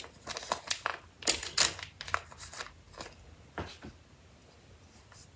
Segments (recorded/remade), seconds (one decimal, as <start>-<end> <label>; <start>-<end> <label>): 0.0-5.4 recorded